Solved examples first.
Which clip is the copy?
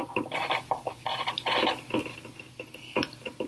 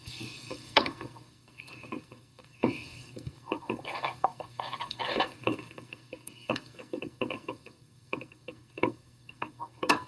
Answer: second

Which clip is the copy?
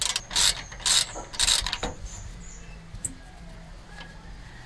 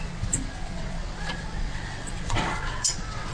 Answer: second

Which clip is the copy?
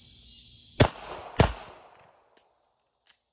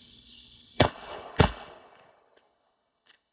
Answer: second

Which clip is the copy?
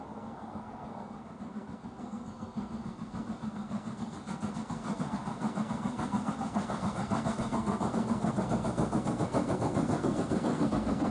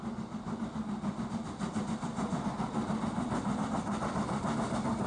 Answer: first